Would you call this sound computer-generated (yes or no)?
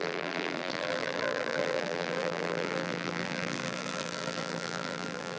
yes